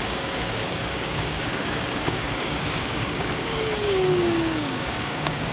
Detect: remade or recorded remade